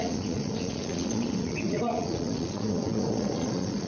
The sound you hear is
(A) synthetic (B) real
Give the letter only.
A